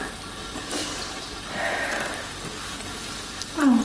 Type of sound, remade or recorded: recorded